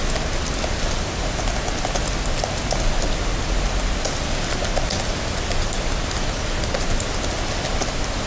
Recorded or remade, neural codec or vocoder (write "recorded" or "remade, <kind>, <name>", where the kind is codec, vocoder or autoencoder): recorded